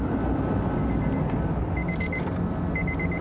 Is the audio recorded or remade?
recorded